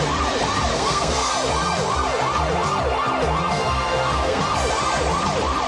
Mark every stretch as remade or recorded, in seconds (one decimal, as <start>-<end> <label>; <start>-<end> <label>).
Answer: 0.0-0.7 recorded; 0.7-1.3 remade; 1.3-3.5 recorded; 3.5-4.4 remade; 4.4-5.7 recorded